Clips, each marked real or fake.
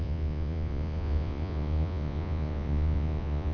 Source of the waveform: fake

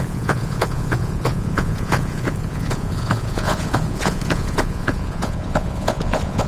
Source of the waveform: fake